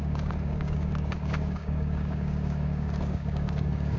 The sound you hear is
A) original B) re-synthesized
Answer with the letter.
B